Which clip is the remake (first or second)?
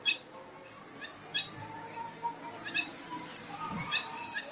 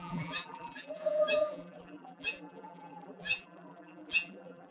second